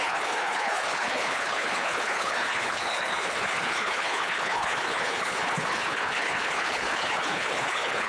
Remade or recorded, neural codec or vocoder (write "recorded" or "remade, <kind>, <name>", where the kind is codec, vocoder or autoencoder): remade, codec, HILCodec